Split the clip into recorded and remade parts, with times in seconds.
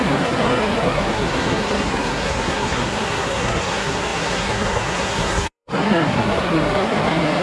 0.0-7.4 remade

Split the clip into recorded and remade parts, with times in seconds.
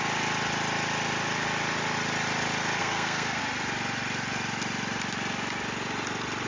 0.0-2.8 recorded; 2.8-3.4 remade; 3.4-6.5 recorded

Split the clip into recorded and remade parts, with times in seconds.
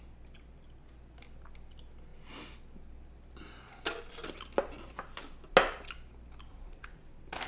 0.0-6.5 recorded; 6.5-7.0 remade; 7.0-7.5 recorded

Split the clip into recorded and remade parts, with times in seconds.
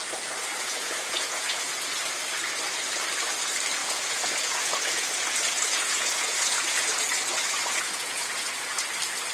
0.0-2.0 remade; 2.0-3.8 recorded; 3.8-8.9 remade; 8.9-9.3 recorded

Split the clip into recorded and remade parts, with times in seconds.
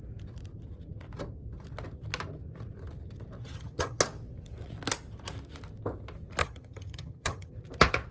0.0-3.4 recorded; 3.4-4.0 remade; 4.0-6.4 recorded; 6.4-7.5 remade; 7.5-8.1 recorded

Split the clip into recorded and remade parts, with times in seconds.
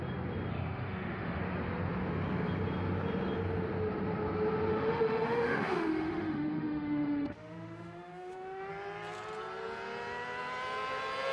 0.0-0.5 recorded; 0.5-1.4 remade; 1.4-4.7 recorded; 4.7-8.7 remade; 8.7-11.3 recorded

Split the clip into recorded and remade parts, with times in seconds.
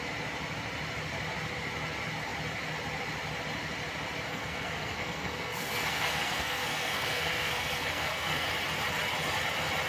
0.0-4.3 recorded; 4.3-8.5 remade; 8.5-9.9 recorded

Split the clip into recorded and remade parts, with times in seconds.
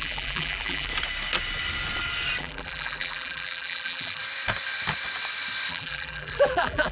0.0-0.9 remade; 0.9-2.4 recorded; 2.4-4.2 remade; 4.2-5.7 recorded; 5.7-6.9 remade